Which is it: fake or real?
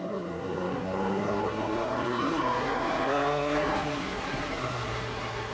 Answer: fake